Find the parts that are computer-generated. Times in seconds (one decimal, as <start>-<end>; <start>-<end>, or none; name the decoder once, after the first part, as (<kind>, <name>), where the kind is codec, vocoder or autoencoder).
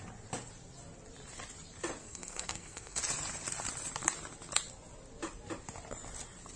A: 2.0-3.0 (codec, SNAC)